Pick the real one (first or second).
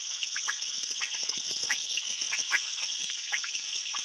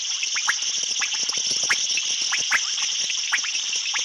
second